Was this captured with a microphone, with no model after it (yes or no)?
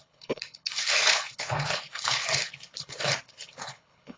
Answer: no